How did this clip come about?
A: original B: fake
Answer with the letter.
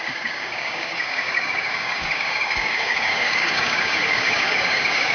B